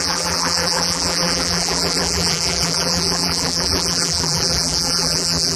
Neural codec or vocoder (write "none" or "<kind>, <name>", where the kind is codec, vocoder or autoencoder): vocoder, BigVGAN v2